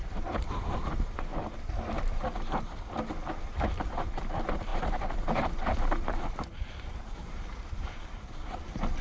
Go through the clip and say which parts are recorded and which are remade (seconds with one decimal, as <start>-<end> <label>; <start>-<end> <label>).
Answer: 0.0-1.3 remade; 1.3-3.4 recorded; 3.4-9.0 remade